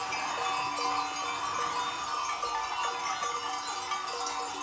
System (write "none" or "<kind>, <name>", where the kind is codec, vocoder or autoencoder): none